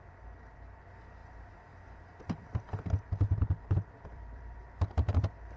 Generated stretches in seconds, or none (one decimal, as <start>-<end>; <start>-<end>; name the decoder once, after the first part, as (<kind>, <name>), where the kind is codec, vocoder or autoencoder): 1.2-4.6 (vocoder, BigVGAN v2)

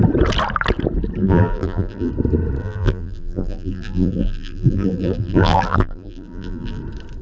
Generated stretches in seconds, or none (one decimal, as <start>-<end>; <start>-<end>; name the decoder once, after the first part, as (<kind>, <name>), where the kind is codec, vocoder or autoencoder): 1.2-2.1 (vocoder, BigVGAN v2); 2.6-6.8

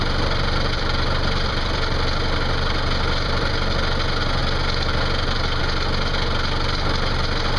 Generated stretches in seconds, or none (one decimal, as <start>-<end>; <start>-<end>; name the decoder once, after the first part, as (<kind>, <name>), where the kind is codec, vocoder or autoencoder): 0.0-3.5 (vocoder, BigVGAN v2); 4.4-5.6

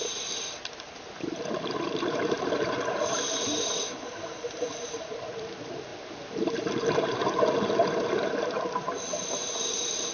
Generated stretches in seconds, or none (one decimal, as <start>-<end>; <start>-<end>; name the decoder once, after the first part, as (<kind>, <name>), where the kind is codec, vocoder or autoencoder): 0.0-10.1 (vocoder, BigVGAN v2)